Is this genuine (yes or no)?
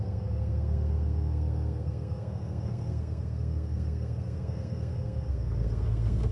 no